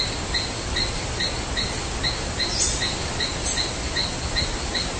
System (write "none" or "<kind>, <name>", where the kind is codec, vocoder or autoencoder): none